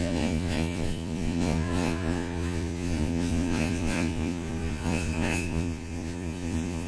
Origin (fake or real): fake